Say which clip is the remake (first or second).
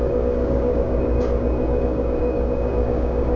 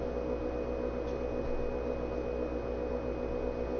first